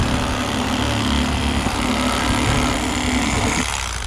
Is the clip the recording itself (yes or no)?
yes